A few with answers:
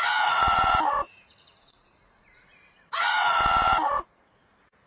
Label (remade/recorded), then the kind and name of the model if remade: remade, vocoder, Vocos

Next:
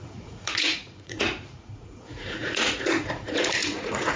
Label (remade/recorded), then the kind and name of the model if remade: remade, vocoder, Vocos